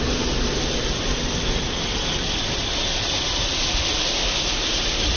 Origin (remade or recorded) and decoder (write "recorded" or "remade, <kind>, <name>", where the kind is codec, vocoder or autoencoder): recorded